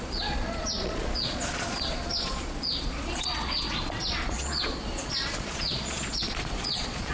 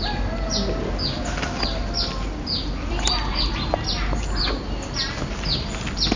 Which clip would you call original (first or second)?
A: second